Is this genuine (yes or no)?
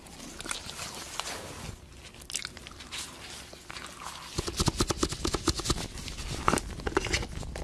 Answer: yes